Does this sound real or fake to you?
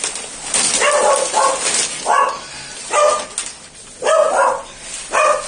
real